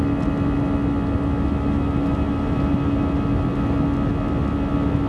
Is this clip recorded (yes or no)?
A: yes